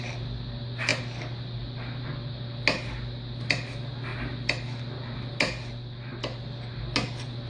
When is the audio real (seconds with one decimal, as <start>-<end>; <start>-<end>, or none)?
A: 0.0-7.5